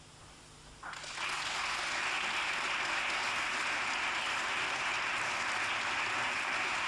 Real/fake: real